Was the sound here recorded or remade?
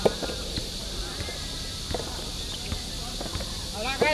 recorded